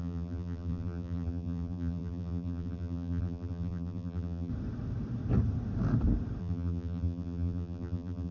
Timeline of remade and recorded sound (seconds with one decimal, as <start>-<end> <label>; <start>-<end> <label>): 0.0-4.5 remade; 4.5-6.4 recorded; 6.4-8.3 remade